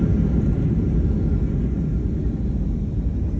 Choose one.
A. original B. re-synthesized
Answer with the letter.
A